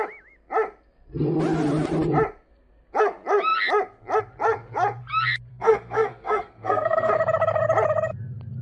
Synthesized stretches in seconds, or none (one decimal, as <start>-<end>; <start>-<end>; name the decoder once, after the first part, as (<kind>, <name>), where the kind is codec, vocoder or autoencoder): 5.5-7.1 (codec, SNAC)

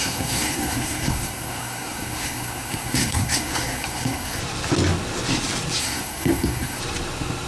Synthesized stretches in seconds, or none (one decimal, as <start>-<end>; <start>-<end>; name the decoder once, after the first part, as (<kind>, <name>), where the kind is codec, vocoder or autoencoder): 0.0-4.4 (codec, SNAC); 5.8-6.8

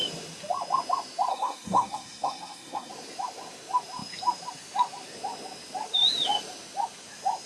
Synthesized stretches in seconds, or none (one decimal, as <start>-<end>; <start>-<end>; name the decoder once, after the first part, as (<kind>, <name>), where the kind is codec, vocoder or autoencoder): 1.3-2.9 (codec, SNAC)

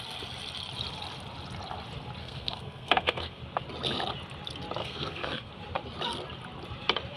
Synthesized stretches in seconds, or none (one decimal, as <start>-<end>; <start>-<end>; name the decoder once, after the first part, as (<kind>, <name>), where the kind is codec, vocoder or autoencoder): 2.2-3.4 (codec, SNAC); 4.8-5.5

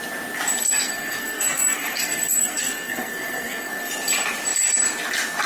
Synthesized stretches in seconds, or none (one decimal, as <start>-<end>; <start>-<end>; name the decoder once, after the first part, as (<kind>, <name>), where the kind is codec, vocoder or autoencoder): 0.6-3.9 (codec, SNAC)